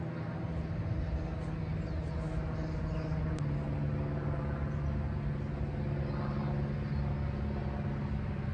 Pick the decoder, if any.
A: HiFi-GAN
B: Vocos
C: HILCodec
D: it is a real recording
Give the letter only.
D